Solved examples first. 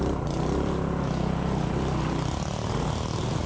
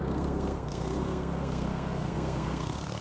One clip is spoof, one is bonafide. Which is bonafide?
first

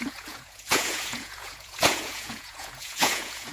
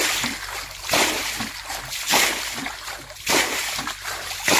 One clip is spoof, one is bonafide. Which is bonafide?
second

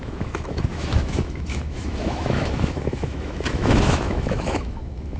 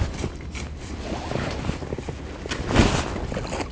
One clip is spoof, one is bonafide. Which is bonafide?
second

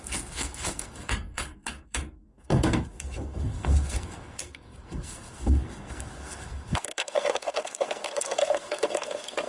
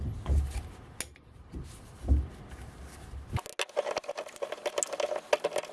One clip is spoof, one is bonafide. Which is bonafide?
second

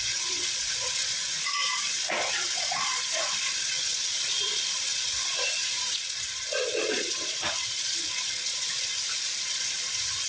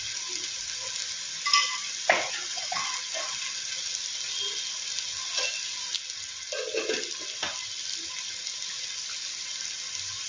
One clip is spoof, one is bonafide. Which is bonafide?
second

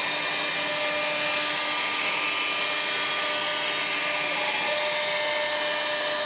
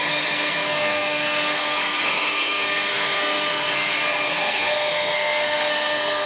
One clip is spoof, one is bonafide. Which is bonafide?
first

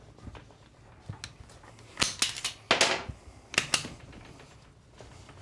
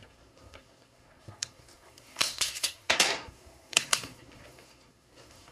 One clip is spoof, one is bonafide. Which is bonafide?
first